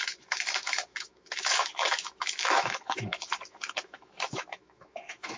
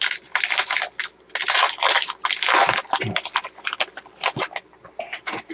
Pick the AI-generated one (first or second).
first